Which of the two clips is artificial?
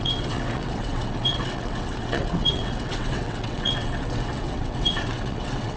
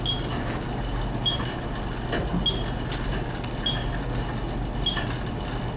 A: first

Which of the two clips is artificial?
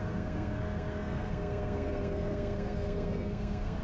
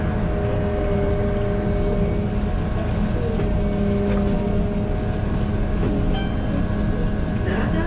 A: first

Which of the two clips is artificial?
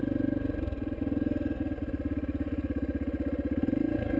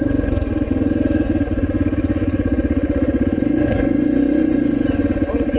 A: second